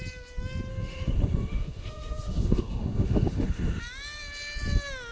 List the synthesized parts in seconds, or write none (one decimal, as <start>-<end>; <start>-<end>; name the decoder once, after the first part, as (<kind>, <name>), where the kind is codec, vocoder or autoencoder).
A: 0.7-3.8 (autoencoder, DAC-VAE)